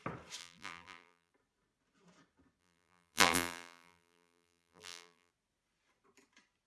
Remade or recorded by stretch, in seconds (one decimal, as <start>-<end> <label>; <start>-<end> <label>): 0.0-0.4 recorded; 0.4-1.3 remade; 1.3-2.6 recorded; 2.6-5.3 remade; 5.3-6.7 recorded